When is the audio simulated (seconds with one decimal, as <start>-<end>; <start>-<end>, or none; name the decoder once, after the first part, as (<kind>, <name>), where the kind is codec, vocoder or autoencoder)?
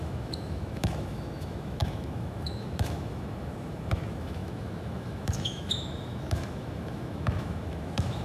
0.0-8.2 (autoencoder, DAC-VAE)